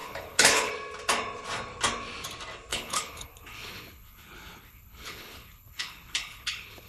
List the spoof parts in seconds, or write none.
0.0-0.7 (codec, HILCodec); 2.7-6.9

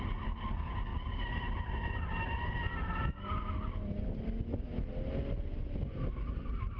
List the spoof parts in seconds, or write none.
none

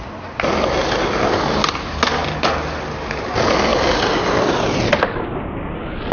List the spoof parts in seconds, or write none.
none

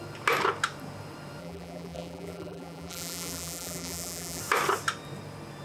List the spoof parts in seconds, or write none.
1.4-4.4 (vocoder, BigVGAN v2)

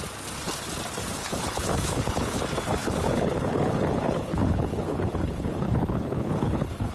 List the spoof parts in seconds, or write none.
1.2-2.4 (codec, HILCodec); 2.8-6.9

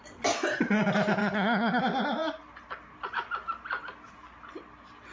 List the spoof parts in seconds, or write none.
1.2-1.8 (vocoder, HiFi-GAN)

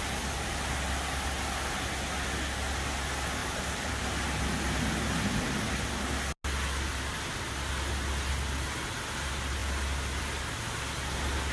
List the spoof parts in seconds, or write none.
3.4-3.9 (vocoder, BigVGAN v2)

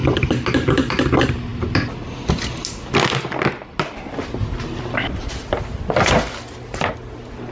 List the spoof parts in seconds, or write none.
none